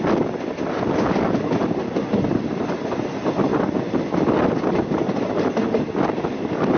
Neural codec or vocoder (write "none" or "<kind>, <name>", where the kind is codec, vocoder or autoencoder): none